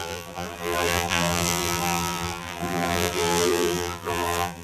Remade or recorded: remade